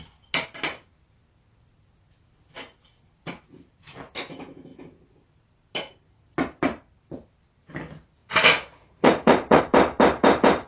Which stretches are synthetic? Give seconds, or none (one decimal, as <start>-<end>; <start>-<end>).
8.2-9.6